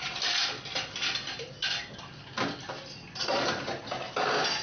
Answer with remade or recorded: recorded